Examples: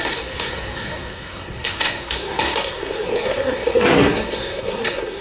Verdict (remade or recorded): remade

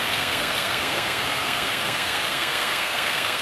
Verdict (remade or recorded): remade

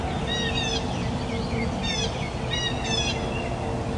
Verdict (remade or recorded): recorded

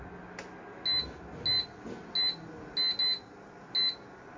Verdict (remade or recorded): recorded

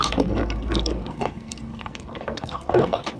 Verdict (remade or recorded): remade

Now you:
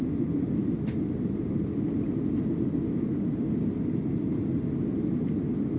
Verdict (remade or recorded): recorded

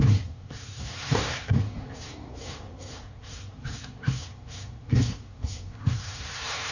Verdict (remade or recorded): remade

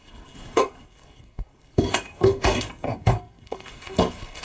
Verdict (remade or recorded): remade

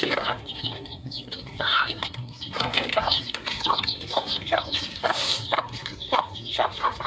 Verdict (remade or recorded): remade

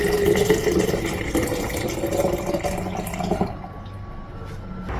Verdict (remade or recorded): recorded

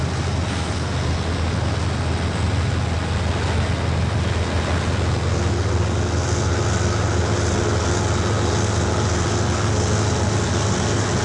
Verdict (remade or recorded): recorded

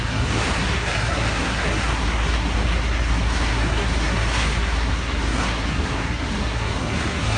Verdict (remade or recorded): remade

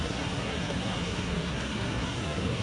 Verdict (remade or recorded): remade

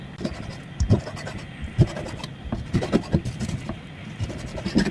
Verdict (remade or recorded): recorded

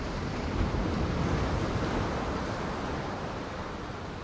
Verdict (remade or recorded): recorded